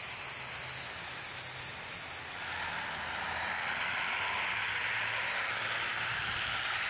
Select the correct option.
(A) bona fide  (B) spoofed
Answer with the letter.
A